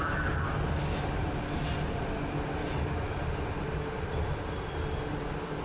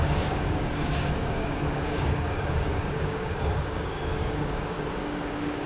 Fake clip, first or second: second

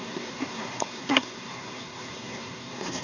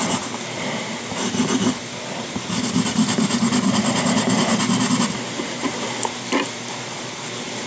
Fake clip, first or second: first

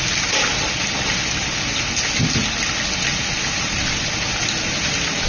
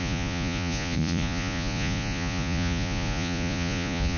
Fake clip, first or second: second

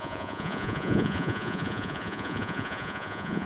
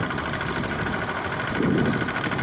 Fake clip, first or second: first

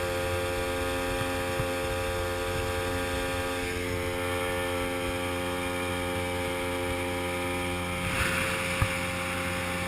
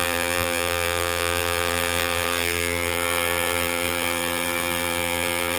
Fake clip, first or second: second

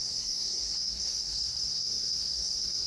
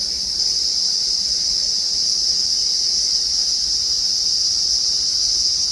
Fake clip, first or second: first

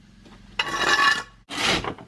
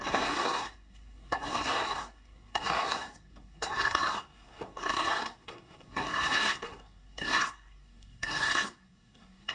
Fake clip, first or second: second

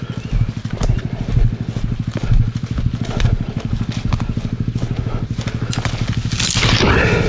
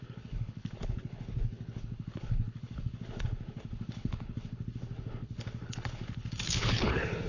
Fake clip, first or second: second